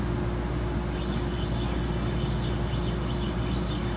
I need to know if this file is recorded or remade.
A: recorded